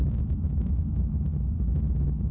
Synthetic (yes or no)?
no